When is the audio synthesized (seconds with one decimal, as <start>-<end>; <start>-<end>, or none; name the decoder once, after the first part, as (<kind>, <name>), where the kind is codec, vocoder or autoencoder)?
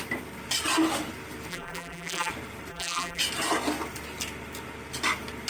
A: 1.5-2.3 (vocoder, BigVGAN v2); 2.7-3.2